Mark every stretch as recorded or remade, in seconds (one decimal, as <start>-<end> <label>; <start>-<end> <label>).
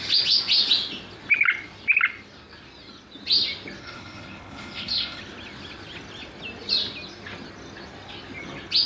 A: 0.0-3.8 recorded; 3.8-5.2 remade; 5.2-8.9 recorded